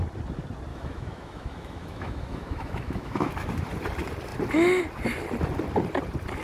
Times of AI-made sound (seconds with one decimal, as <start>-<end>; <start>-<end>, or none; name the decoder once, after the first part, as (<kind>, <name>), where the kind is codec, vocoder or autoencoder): 0.7-3.3 (autoencoder, DAC-VAE)